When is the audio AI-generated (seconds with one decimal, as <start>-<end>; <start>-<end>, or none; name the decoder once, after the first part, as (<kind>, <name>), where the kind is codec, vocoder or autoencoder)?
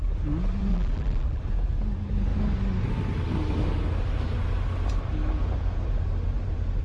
0.7-1.4 (vocoder, BigVGAN v2)